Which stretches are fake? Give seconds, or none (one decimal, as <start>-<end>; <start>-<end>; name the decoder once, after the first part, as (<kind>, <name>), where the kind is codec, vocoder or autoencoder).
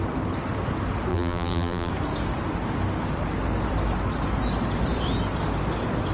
1.1-1.9 (vocoder, BigVGAN v2)